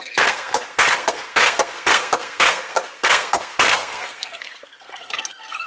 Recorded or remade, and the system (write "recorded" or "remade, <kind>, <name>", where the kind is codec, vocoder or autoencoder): remade, codec, SNAC